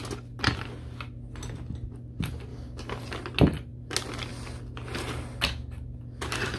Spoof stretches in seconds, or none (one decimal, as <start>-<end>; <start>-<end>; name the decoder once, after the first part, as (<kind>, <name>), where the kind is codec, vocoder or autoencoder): 2.5-3.0 (codec, DAC)